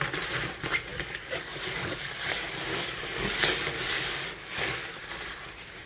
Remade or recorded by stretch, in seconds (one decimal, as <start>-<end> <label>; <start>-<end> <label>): 0.0-0.9 recorded; 0.9-2.3 remade; 2.3-2.7 recorded; 2.7-5.0 remade; 5.0-5.9 recorded